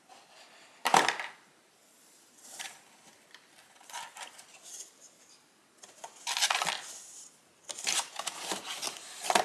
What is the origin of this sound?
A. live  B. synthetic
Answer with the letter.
A